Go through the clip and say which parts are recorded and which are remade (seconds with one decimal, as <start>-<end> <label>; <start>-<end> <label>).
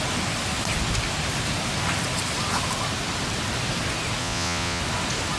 0.0-4.2 recorded; 4.2-4.8 remade; 4.8-5.4 recorded